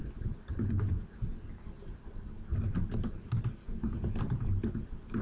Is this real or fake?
real